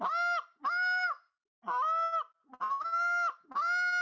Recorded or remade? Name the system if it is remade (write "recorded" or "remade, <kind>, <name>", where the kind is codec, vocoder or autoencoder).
recorded